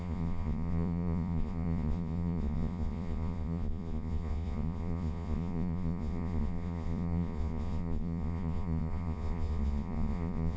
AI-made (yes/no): yes